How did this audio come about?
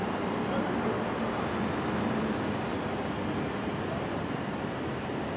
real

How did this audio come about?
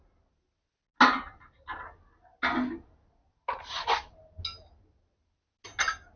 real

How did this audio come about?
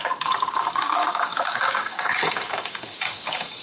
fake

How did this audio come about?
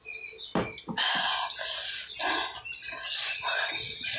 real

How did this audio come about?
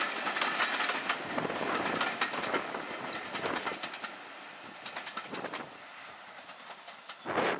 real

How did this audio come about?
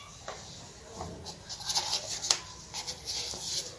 real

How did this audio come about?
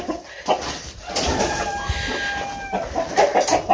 real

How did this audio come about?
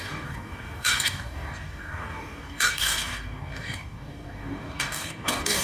fake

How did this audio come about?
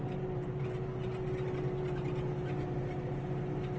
real